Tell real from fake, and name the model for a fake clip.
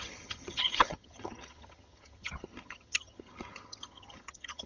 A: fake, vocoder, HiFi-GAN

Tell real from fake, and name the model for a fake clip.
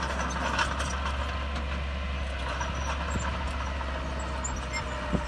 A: real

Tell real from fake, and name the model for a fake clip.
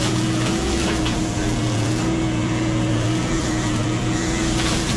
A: fake, vocoder, BigVGAN v2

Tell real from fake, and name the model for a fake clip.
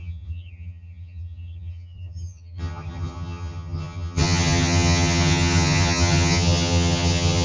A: fake, vocoder, HiFi-GAN